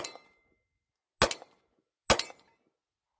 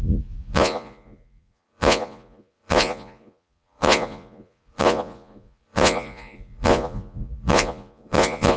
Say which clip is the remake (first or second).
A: second